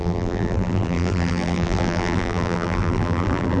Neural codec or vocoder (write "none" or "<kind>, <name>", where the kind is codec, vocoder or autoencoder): vocoder, BigVGAN v2